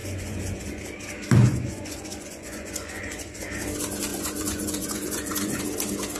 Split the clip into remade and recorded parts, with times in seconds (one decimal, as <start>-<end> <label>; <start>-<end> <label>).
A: 0.0-0.8 remade; 0.8-1.4 recorded; 1.4-3.5 remade; 3.5-4.1 recorded; 4.1-5.6 remade; 5.6-6.2 recorded